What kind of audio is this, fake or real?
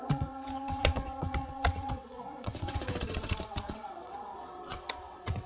fake